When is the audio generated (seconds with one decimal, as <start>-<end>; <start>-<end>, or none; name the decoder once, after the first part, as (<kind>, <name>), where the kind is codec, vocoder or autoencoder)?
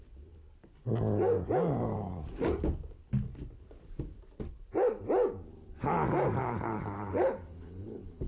6.4-8.3 (codec, HILCodec)